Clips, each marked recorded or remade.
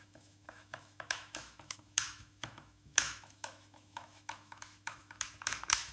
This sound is remade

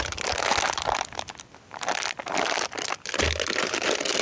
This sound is recorded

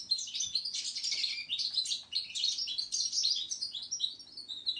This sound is recorded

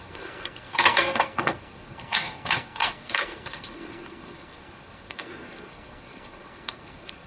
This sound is remade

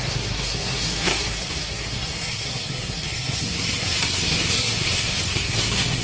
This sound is remade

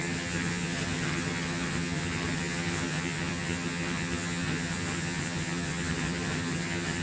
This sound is remade